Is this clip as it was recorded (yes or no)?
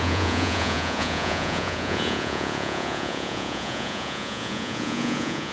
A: no